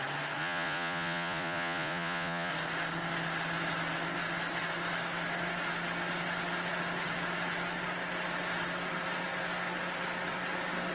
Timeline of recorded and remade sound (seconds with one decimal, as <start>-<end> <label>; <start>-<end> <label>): 0.0-0.4 recorded; 0.4-2.5 remade; 2.5-10.9 recorded